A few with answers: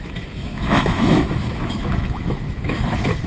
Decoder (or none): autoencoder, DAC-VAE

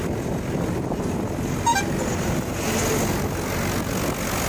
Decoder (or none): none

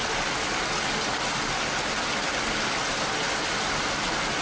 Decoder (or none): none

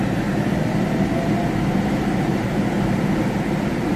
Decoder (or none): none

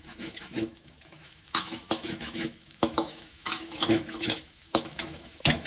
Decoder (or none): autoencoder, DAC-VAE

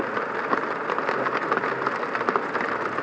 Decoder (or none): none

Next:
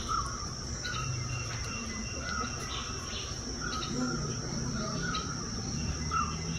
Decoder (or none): none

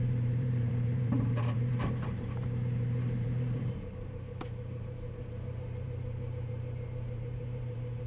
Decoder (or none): vocoder, BigVGAN v2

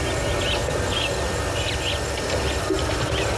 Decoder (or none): none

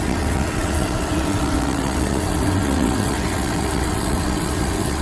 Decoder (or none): vocoder, WaveNeXt